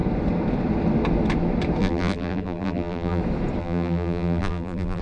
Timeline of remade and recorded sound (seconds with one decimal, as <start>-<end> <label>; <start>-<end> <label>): 0.0-1.8 recorded; 1.8-3.2 remade; 3.2-3.6 recorded; 3.6-5.0 remade